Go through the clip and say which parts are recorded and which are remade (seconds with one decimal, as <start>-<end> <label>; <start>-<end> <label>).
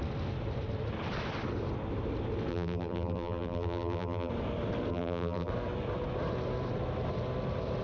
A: 0.0-2.5 recorded; 2.5-4.3 remade; 4.3-4.9 recorded; 4.9-5.5 remade; 5.5-7.8 recorded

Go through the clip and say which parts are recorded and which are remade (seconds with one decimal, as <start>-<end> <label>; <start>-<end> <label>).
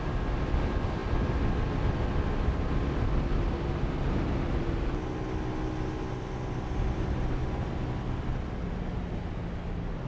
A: 0.0-10.1 recorded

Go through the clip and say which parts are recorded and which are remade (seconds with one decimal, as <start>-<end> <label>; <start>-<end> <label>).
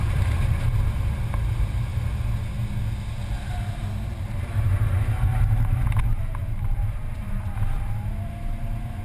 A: 0.0-1.9 remade; 1.9-3.5 recorded; 3.5-9.0 remade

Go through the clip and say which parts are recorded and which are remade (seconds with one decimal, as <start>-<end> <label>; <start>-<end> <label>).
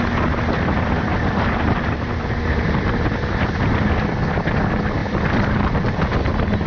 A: 0.0-1.1 recorded; 1.1-2.6 remade; 2.6-5.0 recorded; 5.0-6.3 remade; 6.3-6.7 recorded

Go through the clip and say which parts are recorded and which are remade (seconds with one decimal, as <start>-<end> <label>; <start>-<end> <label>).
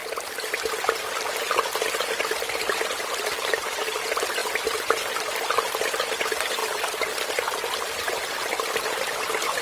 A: 0.0-9.6 recorded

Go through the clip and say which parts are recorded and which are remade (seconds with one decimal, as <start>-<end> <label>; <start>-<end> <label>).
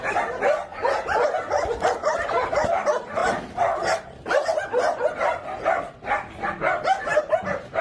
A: 0.0-7.8 recorded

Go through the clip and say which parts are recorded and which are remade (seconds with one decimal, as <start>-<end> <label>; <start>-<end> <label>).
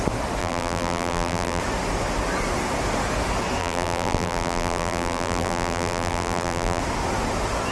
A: 0.0-0.4 recorded; 0.4-1.6 remade; 1.6-3.6 recorded; 3.6-6.8 remade; 6.8-7.7 recorded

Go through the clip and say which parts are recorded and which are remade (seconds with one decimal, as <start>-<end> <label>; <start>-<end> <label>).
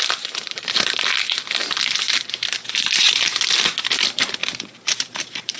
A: 0.0-4.4 recorded; 4.4-5.6 remade